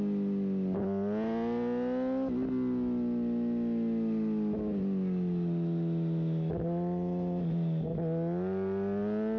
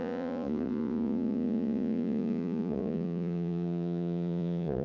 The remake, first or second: second